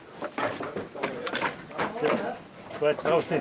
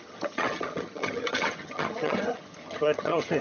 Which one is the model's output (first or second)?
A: second